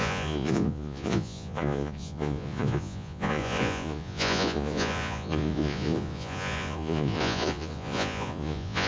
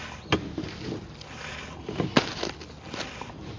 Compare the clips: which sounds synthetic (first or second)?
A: first